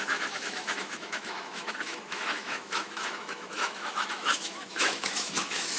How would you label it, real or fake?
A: fake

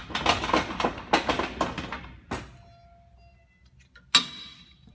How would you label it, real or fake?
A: real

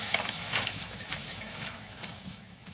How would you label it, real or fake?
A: fake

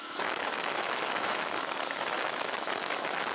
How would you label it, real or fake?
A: fake